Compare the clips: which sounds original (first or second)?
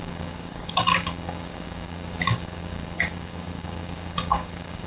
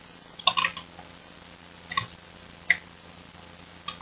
second